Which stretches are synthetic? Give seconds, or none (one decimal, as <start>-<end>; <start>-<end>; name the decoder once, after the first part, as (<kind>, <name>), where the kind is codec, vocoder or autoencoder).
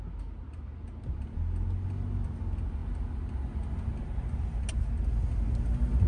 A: none